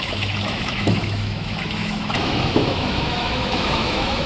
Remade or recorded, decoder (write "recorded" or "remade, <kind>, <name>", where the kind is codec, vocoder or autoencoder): remade, autoencoder, DAC-VAE